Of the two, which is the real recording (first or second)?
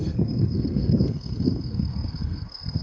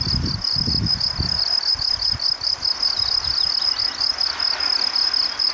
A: second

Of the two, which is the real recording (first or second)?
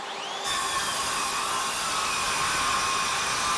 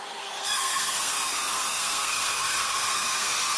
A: first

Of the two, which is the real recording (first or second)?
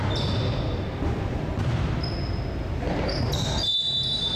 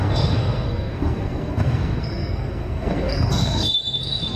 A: first